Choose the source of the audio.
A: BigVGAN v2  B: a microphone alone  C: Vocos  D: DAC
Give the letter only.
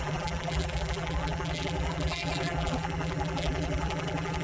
A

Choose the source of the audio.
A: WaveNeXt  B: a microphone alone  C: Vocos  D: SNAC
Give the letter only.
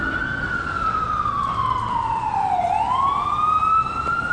B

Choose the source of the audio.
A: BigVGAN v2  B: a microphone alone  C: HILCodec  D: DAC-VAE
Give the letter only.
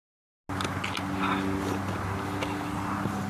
B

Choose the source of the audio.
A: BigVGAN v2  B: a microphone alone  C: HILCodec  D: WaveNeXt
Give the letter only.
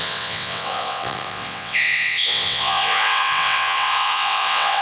D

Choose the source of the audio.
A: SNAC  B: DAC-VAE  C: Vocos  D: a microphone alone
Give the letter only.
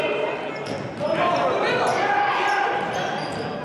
D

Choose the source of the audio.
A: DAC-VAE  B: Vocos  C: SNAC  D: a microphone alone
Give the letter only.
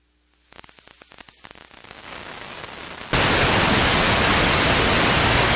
D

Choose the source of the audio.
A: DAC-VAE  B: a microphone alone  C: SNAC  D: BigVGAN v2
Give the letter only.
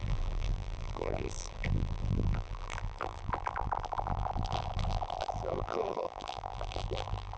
D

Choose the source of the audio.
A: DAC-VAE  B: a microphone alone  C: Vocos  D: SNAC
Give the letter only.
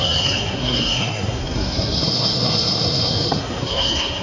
D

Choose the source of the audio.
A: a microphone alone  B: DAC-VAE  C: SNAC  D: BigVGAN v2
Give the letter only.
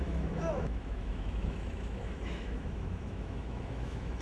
B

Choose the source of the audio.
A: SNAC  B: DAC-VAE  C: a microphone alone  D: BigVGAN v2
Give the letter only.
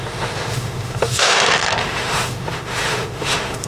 B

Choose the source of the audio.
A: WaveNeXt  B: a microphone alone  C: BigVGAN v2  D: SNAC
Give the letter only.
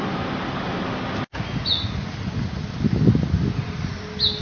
B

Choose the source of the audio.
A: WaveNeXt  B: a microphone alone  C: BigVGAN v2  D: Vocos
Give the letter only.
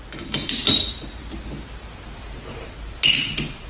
B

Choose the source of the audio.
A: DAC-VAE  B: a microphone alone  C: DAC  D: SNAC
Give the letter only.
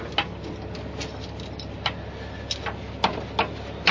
B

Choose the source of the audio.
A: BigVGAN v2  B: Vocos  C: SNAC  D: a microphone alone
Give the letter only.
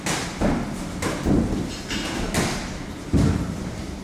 A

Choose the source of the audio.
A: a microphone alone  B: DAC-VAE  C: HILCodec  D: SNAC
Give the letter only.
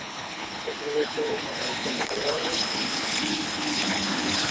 C